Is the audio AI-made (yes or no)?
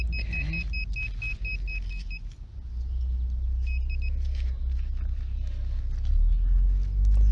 no